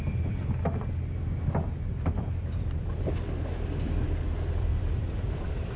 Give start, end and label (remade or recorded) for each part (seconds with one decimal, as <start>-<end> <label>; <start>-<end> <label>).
0.0-1.9 recorded; 1.9-3.0 remade; 3.0-4.7 recorded; 4.7-5.8 remade